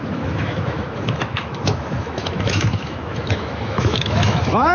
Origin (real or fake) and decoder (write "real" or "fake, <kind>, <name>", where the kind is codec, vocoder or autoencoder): fake, autoencoder, DAC-VAE